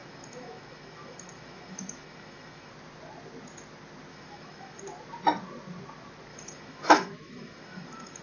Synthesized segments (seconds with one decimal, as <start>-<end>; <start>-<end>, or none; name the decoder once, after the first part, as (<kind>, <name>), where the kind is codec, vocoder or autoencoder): 0.0-2.7 (autoencoder, DAC-VAE); 4.1-4.8; 6.3-8.2